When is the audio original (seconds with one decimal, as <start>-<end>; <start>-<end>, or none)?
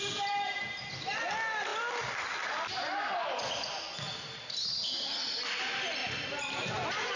0.0-6.0; 6.7-7.2